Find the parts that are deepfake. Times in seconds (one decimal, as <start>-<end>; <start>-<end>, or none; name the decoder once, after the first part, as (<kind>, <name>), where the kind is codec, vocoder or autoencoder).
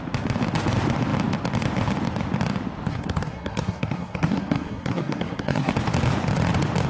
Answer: 2.9-5.7 (codec, SNAC)